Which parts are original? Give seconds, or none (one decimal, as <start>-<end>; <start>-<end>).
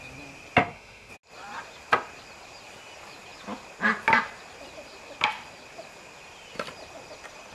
0.0-0.6; 1.1-7.5